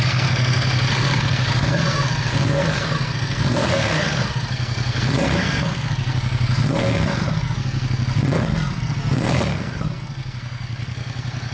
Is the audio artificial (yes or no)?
yes